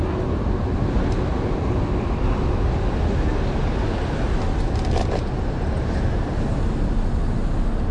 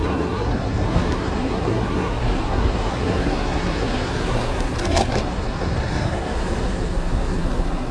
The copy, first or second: second